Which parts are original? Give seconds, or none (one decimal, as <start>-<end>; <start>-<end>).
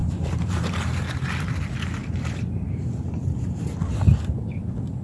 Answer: 0.9-2.0; 3.6-5.0